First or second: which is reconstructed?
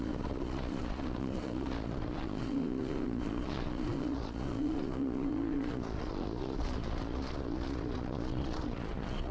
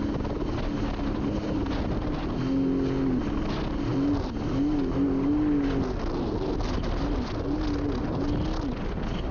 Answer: first